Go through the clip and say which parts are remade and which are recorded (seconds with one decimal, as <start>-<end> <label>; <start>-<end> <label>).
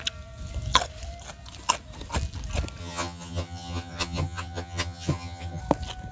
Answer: 0.0-2.8 recorded; 2.8-5.6 remade; 5.6-6.1 recorded